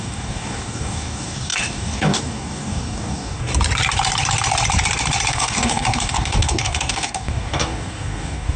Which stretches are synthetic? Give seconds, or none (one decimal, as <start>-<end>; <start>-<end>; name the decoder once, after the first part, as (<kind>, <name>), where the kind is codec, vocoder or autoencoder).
0.0-3.5 (codec, DAC); 5.3-8.6